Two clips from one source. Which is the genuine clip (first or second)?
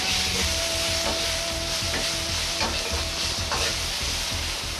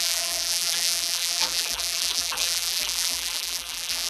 first